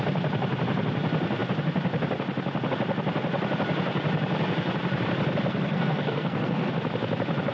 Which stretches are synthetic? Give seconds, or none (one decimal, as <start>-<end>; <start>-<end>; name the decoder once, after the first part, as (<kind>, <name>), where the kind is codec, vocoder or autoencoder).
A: 5.5-6.7 (codec, SNAC)